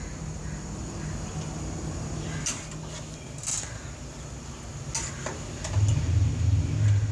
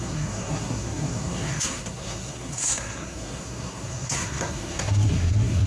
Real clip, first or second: first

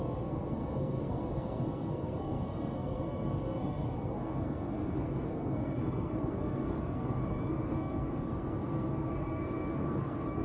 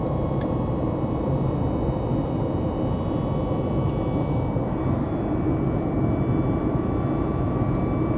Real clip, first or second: second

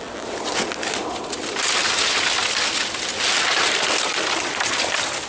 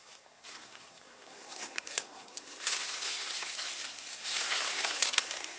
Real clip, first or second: first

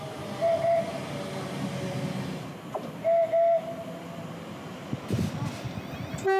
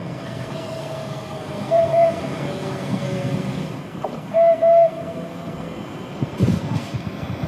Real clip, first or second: first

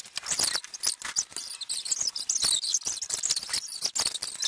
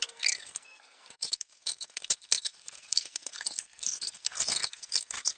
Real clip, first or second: first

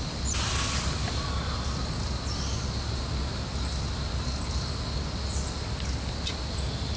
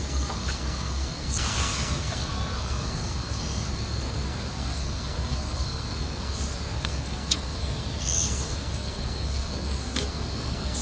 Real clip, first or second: first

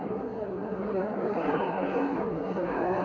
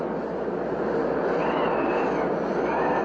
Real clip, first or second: second